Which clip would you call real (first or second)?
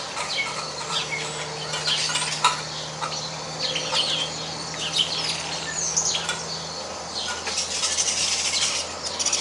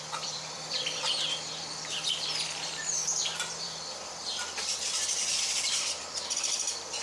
first